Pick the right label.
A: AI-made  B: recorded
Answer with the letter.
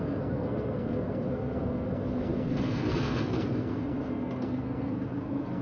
A